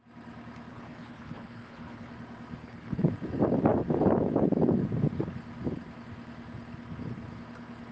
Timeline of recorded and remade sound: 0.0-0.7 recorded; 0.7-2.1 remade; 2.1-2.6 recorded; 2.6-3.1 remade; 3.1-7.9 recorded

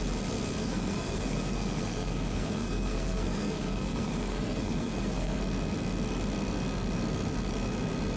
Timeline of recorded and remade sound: 0.0-0.6 recorded; 0.6-5.4 remade; 5.4-8.2 recorded

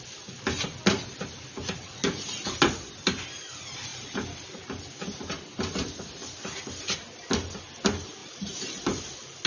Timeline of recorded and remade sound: 0.0-8.2 recorded; 8.2-9.0 remade; 9.0-9.5 recorded

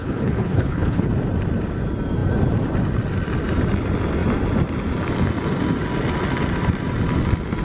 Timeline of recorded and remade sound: 0.0-1.1 remade; 1.1-7.6 recorded

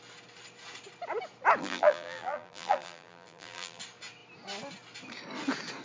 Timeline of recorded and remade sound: 0.0-1.6 recorded; 1.6-3.8 remade; 3.8-5.8 recorded

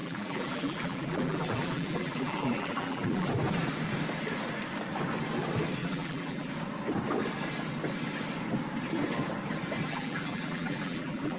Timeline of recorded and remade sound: 0.0-3.3 remade; 3.3-5.8 recorded; 5.8-6.5 remade; 6.5-9.9 recorded; 9.9-11.4 remade

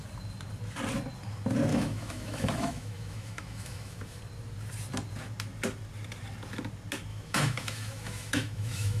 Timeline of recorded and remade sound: 0.0-1.7 recorded; 1.7-4.2 remade; 4.2-7.1 recorded; 7.1-9.0 remade

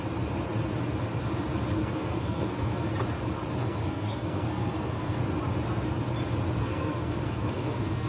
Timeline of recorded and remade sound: 0.0-1.8 recorded; 1.8-2.9 remade; 2.9-3.6 recorded; 3.6-5.2 remade; 5.2-6.6 recorded; 6.6-8.1 remade